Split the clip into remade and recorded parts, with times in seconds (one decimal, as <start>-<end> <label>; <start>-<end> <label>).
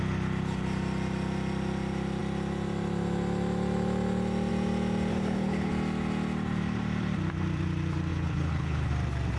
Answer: 0.0-5.1 recorded; 5.1-5.7 remade; 5.7-8.1 recorded; 8.1-8.9 remade; 8.9-9.4 recorded